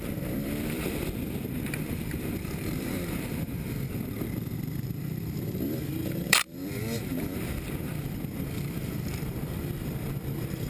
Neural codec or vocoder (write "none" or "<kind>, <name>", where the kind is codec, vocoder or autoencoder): vocoder, BigVGAN v2